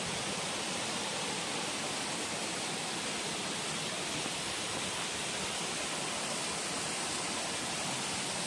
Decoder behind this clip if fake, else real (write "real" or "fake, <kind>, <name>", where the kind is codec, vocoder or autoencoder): real